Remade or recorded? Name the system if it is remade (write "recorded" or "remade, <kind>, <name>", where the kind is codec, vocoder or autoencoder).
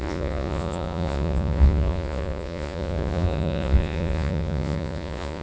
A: remade, vocoder, Vocos